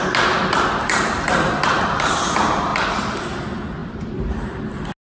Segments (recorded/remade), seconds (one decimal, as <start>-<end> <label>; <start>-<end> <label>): 0.0-0.8 recorded; 0.8-1.7 remade; 1.7-3.8 recorded; 3.8-4.6 remade; 4.6-5.2 recorded

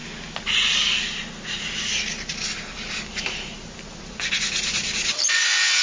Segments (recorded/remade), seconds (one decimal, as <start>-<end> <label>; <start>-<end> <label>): 0.0-2.1 recorded; 2.1-5.8 remade